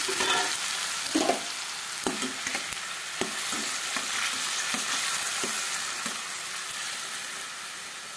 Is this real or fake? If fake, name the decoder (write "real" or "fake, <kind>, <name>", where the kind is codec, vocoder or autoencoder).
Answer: real